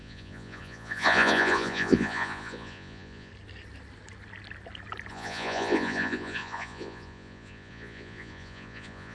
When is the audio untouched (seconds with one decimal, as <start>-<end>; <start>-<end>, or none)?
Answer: 3.3-5.1